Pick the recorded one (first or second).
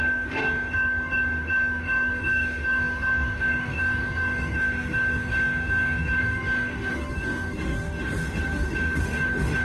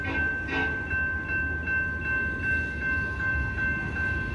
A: second